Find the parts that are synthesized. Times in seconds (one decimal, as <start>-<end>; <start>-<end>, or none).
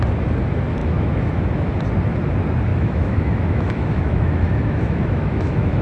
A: 0.8-1.7; 2.7-5.8